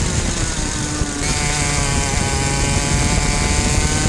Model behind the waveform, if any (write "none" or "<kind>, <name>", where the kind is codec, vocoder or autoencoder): none